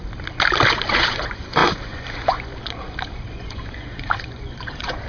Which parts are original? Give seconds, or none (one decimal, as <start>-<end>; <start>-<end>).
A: 0.0-0.9